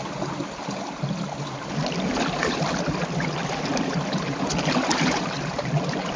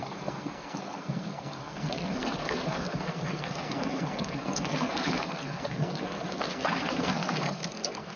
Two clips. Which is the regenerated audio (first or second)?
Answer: second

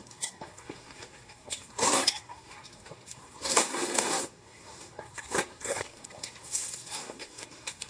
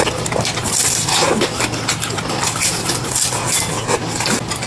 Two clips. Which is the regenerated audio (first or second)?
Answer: first